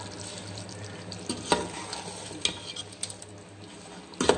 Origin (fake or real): real